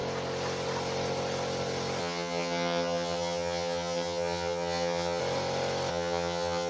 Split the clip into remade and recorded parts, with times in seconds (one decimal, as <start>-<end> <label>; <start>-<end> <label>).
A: 0.0-2.0 recorded; 2.0-5.2 remade; 5.2-5.9 recorded; 5.9-6.7 remade